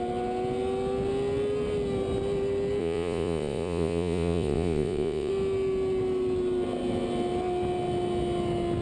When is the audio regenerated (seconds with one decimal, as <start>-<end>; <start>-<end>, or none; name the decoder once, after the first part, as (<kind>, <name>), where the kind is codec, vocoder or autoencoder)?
2.8-5.3 (vocoder, Vocos)